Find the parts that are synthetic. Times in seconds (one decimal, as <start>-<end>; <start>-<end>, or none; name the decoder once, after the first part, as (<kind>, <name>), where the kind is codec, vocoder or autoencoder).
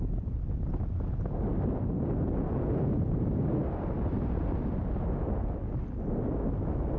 none